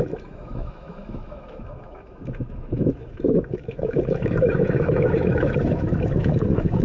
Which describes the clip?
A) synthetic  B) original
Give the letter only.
A